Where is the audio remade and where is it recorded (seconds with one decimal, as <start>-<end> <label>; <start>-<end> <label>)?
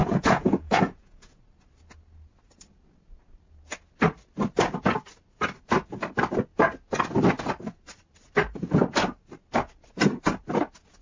0.0-1.4 remade; 1.4-11.0 recorded